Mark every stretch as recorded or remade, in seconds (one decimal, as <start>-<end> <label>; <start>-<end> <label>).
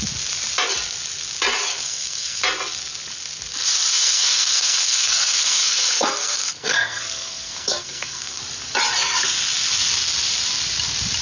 0.0-1.7 recorded; 1.7-2.4 remade; 2.4-3.9 recorded; 3.9-8.4 remade; 8.4-11.2 recorded